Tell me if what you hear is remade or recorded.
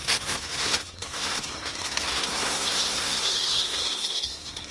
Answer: remade